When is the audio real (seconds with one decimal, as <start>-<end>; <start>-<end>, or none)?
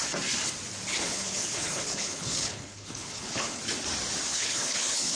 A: 0.0-0.9; 3.6-4.3